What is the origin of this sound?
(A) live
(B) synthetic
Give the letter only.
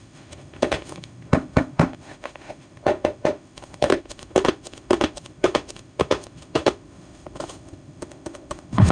B